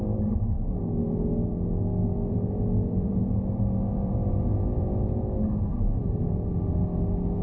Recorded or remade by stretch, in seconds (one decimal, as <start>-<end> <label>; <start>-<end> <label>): 0.0-2.0 recorded; 2.0-4.1 remade; 4.1-7.4 recorded